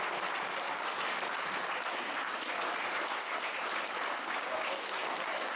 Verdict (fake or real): real